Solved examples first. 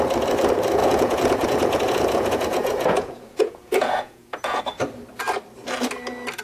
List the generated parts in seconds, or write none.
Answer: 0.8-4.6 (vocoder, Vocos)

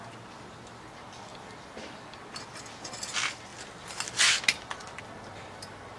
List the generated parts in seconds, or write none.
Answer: none